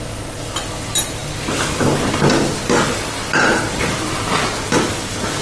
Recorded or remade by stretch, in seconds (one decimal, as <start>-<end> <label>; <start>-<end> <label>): 0.0-5.4 recorded